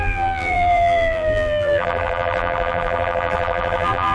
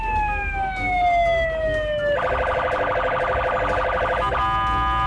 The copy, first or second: first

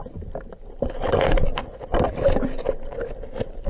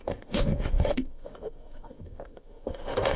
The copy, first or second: second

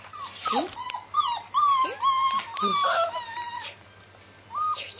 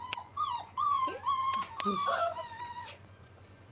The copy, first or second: second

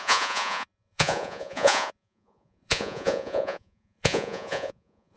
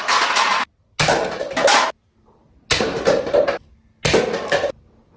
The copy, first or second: first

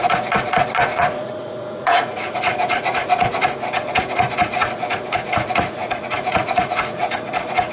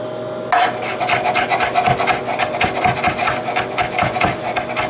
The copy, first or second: first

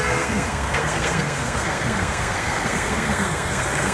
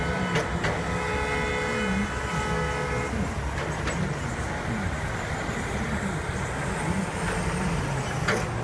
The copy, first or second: first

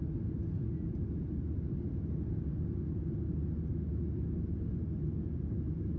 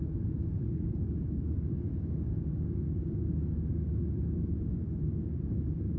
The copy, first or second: second